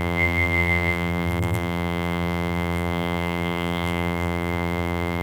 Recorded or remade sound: remade